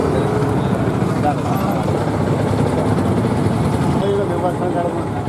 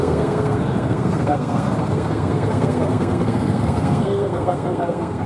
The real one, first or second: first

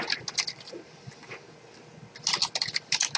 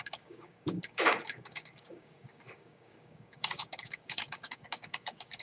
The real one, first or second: first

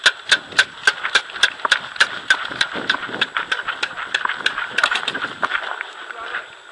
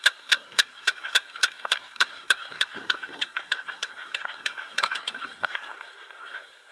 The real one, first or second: first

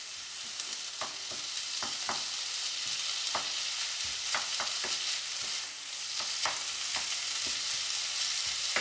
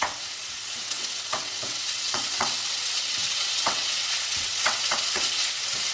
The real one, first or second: first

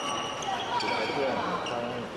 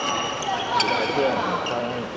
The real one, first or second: first